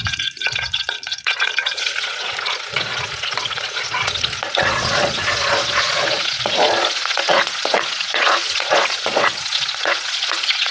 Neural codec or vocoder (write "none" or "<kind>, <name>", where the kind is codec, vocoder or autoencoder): vocoder, Vocos